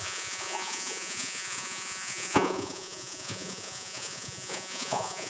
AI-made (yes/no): yes